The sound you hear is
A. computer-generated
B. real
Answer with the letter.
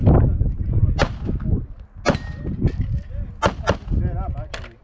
B